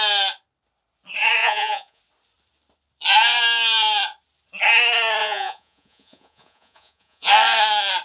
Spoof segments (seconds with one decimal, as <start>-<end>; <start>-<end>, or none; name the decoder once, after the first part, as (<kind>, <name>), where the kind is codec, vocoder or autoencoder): 1.4-2.0 (vocoder, Vocos); 5.2-7.3